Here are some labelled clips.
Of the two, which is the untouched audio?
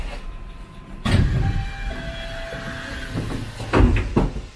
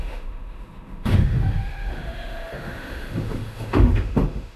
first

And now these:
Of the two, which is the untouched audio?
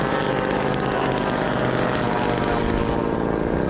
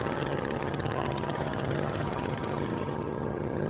first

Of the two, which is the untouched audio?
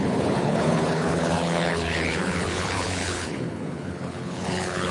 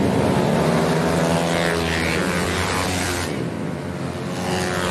second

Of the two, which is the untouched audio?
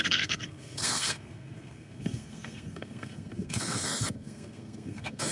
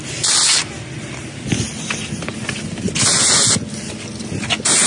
second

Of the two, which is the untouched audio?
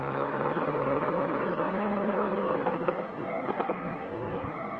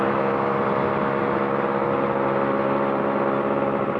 second